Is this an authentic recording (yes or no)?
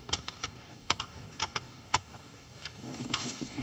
no